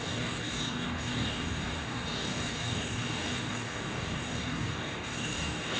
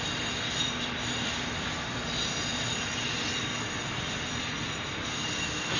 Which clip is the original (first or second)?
second